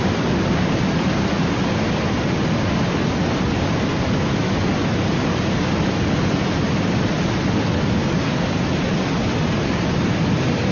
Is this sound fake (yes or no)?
no